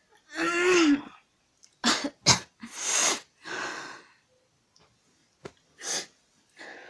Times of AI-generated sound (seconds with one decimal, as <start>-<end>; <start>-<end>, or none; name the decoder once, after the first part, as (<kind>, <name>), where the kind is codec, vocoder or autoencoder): none